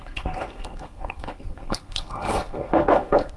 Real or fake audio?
fake